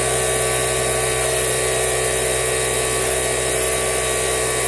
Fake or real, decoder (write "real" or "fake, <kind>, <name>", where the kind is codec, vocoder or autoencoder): fake, vocoder, BigVGAN v2